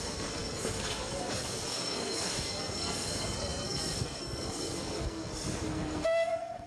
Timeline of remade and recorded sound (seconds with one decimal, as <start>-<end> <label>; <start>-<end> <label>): 0.0-6.7 remade